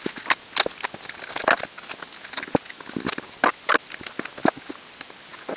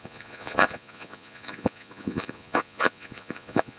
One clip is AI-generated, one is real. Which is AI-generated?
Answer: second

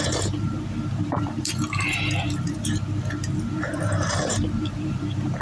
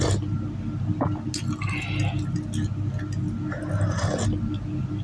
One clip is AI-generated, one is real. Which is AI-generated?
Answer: first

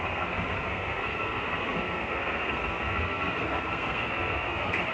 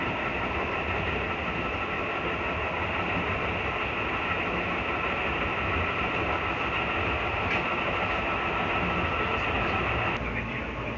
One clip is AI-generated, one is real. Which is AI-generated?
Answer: first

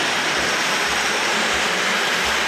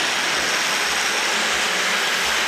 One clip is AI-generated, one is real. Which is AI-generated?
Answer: first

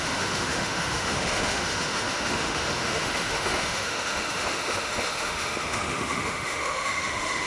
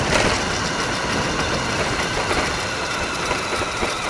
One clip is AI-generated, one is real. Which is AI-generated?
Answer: first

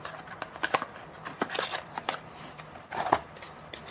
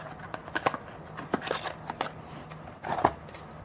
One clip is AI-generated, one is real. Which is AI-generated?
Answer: first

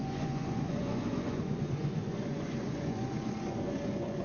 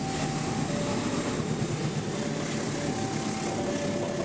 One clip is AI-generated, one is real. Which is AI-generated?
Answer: first